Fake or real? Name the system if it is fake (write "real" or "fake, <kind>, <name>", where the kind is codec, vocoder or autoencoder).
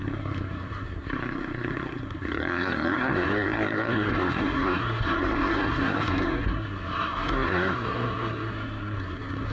fake, codec, SNAC